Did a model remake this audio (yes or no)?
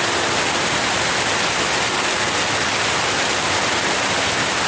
no